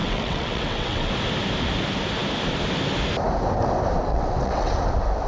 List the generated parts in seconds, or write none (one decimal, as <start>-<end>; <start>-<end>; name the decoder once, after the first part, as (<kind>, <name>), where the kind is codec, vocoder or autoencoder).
0.0-1.1 (vocoder, WaveNeXt); 4.1-4.7